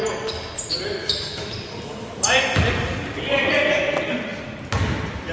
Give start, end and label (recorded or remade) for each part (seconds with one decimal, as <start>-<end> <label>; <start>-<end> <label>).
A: 0.0-1.0 recorded; 1.0-1.5 remade; 1.5-5.3 recorded